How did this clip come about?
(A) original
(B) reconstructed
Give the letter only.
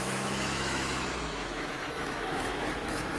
B